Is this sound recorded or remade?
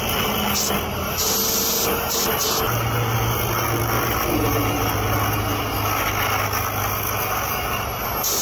recorded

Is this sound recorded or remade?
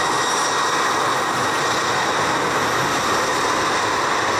recorded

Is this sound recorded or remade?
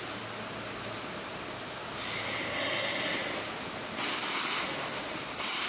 recorded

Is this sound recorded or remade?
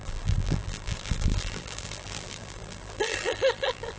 remade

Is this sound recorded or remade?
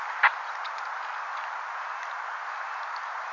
recorded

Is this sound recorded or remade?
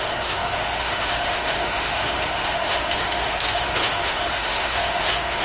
remade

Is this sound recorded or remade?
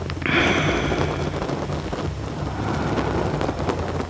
recorded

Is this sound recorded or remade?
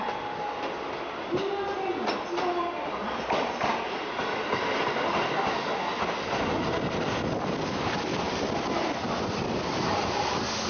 recorded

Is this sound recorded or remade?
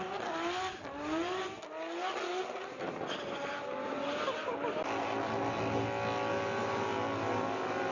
recorded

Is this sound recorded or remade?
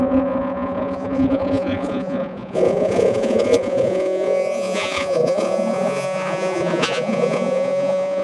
remade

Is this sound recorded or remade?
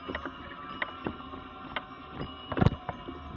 recorded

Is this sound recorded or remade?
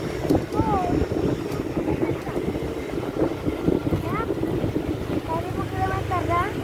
recorded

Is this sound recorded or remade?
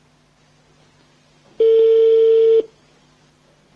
recorded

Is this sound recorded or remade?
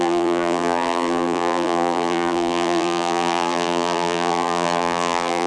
remade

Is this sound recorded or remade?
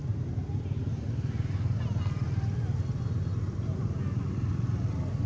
recorded